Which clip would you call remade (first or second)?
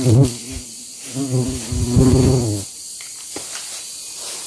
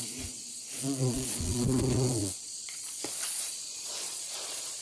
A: second